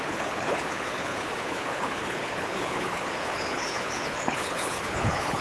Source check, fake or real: fake